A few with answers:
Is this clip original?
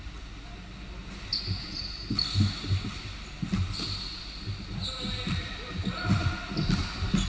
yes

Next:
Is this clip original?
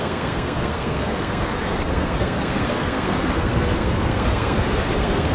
no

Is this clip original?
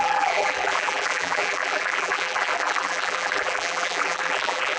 no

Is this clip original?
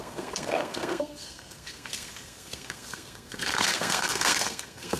no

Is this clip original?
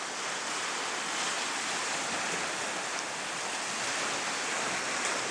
yes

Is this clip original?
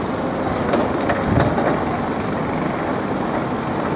yes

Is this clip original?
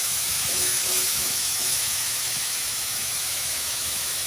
no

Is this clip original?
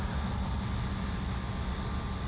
yes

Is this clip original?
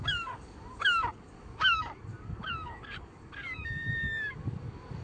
no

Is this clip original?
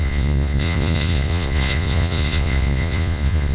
no